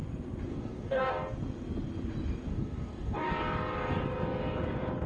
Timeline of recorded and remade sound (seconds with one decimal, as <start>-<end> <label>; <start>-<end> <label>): 0.0-0.5 recorded; 0.5-1.1 remade; 1.1-2.5 recorded; 2.5-3.3 remade; 3.3-5.1 recorded